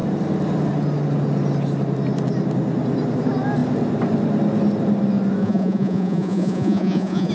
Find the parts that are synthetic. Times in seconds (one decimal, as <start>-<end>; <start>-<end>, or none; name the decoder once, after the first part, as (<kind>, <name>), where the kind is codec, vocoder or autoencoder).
5.4-7.3 (vocoder, Vocos)